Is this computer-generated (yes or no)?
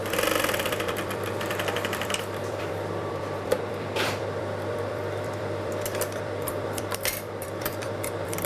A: yes